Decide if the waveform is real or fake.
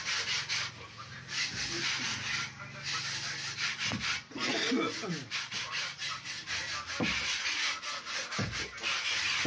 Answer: real